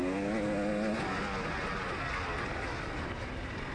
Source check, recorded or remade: recorded